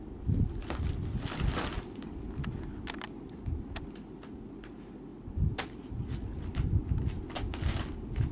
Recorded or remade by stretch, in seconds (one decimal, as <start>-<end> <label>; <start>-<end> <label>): 0.0-8.3 recorded